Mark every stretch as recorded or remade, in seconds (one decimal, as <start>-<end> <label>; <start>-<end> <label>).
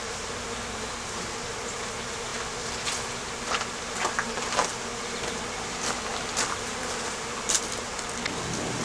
0.0-8.8 recorded